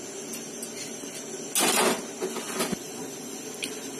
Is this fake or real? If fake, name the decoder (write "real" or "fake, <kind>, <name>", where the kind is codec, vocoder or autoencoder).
real